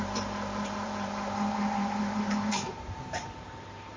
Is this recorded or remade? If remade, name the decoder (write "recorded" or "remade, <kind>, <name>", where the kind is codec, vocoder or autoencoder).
remade, vocoder, BigVGAN v2